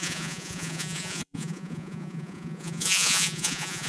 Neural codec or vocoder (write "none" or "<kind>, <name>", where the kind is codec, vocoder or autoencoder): vocoder, Vocos